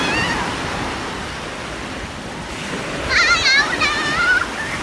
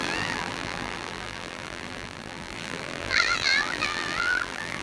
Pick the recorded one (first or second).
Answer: first